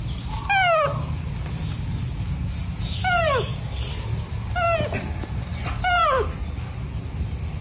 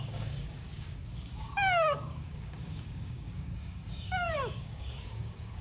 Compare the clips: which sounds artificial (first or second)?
second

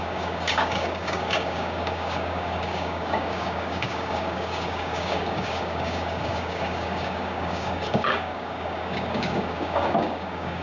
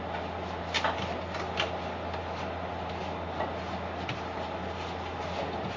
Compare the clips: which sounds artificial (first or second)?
first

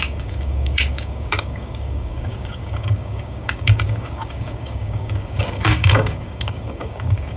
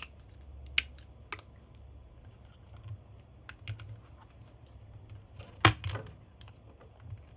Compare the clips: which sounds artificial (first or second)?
first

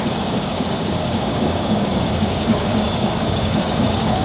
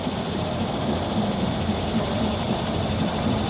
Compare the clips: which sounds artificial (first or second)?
first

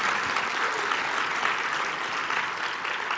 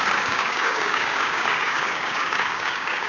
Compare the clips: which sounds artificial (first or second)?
second